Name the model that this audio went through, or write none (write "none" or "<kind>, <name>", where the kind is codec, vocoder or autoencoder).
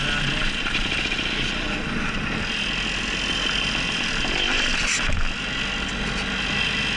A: none